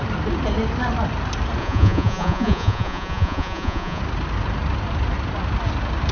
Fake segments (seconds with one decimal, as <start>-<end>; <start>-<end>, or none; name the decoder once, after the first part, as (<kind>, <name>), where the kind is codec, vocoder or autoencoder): 1.6-4.0 (vocoder, Vocos)